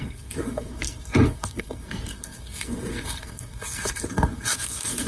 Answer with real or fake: fake